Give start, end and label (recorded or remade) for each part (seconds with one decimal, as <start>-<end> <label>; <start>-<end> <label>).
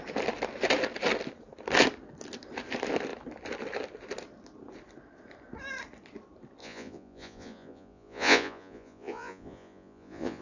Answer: 0.0-6.6 recorded; 6.6-10.4 remade